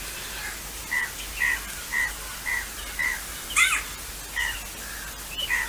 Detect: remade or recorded recorded